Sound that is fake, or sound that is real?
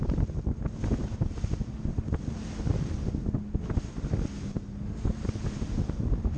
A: real